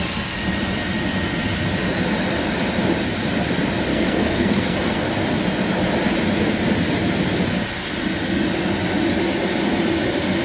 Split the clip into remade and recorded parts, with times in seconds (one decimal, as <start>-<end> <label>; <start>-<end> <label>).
0.0-3.9 recorded; 3.9-5.1 remade; 5.1-10.4 recorded